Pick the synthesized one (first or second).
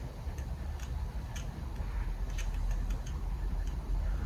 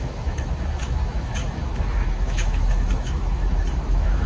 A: second